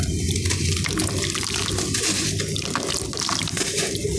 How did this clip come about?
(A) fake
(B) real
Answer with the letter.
B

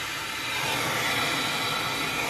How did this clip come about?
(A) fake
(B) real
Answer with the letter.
B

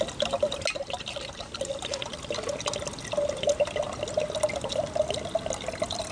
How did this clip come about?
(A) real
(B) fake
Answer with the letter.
A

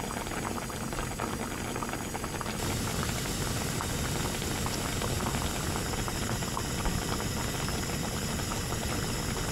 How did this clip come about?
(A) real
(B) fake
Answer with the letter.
A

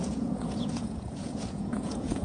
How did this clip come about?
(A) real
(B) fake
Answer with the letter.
B